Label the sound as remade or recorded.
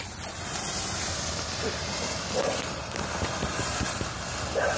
recorded